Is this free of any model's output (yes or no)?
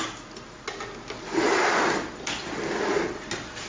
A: yes